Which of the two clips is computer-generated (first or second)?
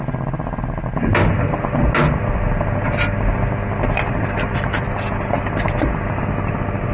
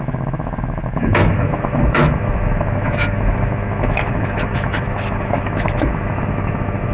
second